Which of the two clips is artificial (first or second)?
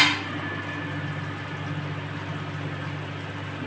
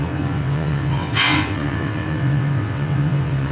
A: second